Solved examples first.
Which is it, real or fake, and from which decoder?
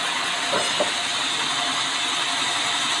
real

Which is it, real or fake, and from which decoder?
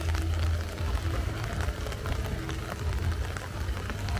real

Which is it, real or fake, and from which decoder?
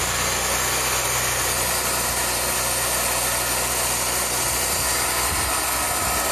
real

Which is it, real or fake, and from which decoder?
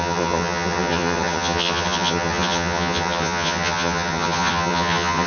fake, vocoder, HiFi-GAN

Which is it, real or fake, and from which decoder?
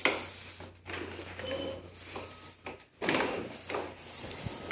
real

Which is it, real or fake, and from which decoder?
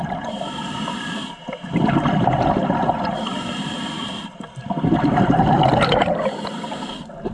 fake, vocoder, BigVGAN v2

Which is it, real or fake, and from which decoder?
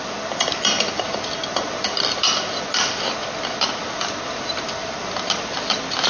real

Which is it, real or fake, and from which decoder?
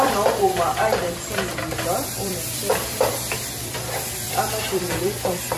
fake, vocoder, BigVGAN v2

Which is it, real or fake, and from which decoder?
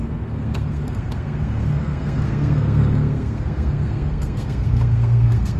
fake, codec, SNAC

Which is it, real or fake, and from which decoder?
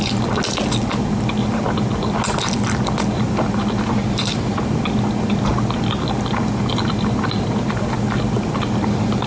real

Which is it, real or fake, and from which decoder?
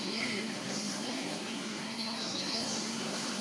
fake, codec, SNAC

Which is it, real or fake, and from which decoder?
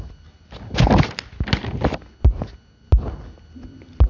real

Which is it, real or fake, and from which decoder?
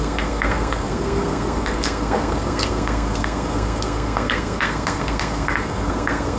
fake, codec, SNAC